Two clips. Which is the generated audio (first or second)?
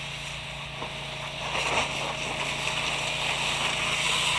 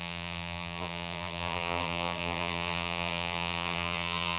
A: second